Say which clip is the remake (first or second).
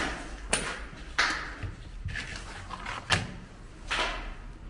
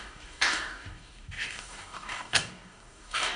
second